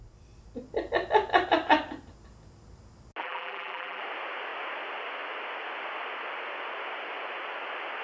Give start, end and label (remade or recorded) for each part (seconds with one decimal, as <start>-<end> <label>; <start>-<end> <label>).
0.0-3.2 recorded; 3.2-4.0 remade; 4.0-8.0 recorded

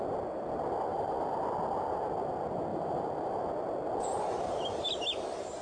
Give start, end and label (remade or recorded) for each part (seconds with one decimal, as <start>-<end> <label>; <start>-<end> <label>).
0.0-0.9 recorded; 0.9-1.4 remade; 1.4-2.7 recorded; 2.7-3.5 remade; 3.5-5.6 recorded

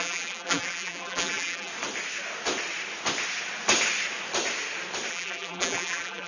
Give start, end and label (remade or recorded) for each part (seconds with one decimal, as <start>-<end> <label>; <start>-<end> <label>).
0.0-1.7 remade; 1.7-5.1 recorded; 5.1-6.3 remade